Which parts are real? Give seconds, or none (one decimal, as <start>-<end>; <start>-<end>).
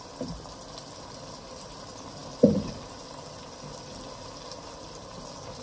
0.0-5.6